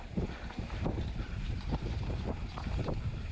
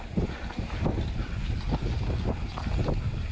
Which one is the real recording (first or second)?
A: second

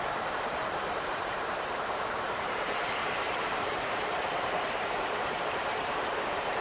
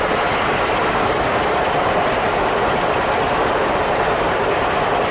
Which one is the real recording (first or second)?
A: second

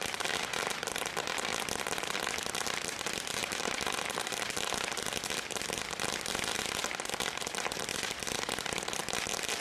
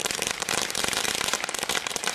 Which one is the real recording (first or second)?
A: first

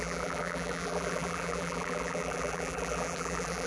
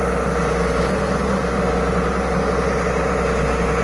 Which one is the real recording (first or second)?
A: second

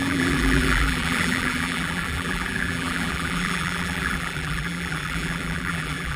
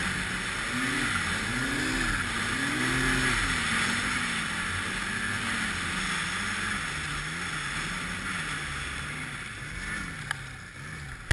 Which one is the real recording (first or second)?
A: second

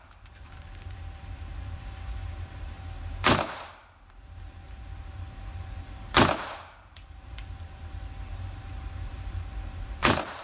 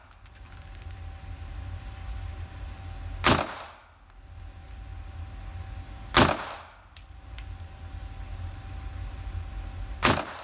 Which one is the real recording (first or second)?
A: second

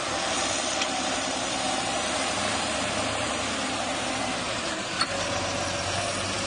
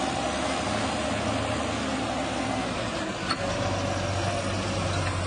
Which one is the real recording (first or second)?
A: second